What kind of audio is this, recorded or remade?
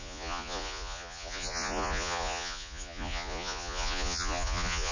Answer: remade